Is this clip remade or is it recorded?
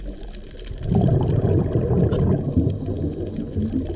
recorded